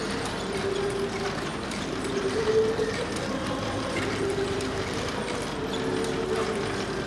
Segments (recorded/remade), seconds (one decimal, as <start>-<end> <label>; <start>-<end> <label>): 0.0-0.6 remade; 0.6-1.5 recorded; 1.5-5.2 remade; 5.2-7.1 recorded